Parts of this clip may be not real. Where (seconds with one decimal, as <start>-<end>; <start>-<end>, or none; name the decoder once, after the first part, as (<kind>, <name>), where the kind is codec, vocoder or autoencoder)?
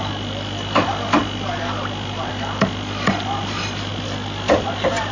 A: none